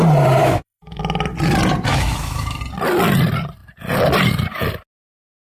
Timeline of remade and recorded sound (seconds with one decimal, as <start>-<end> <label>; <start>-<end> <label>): 0.0-0.4 recorded; 0.4-1.0 remade; 1.0-1.9 recorded; 1.9-2.6 remade; 2.6-5.4 recorded